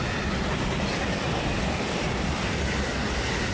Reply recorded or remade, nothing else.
recorded